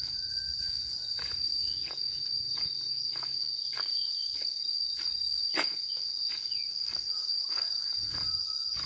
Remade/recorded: remade